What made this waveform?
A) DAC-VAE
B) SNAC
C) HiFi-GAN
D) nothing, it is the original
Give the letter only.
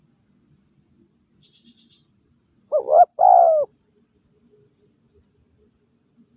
D